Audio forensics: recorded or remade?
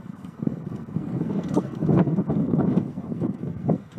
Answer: remade